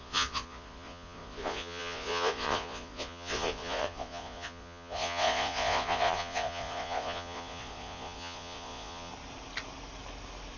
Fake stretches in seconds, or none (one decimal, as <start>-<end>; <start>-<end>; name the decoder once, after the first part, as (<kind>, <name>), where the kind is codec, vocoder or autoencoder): 0.0-9.1 (vocoder, Vocos)